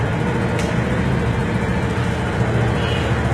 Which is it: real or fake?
real